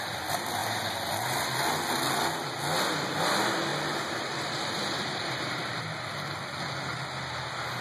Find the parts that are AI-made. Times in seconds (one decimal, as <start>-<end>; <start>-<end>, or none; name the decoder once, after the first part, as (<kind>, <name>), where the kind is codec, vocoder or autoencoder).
3.7-5.8 (vocoder, BigVGAN v2)